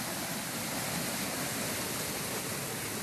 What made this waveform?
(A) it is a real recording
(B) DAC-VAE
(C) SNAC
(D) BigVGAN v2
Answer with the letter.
A